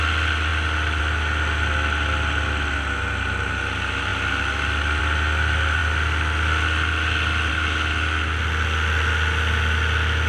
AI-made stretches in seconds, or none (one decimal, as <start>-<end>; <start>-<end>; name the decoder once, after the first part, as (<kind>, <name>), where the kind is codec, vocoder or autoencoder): none